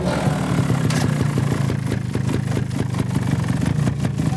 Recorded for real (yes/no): yes